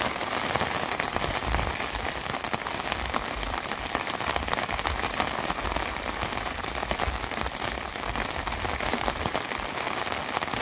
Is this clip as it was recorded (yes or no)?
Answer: yes